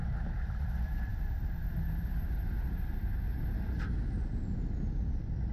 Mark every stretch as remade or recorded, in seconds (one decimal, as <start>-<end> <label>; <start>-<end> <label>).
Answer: 0.0-5.5 recorded